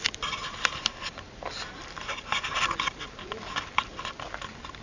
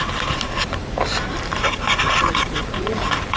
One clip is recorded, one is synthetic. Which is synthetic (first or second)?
second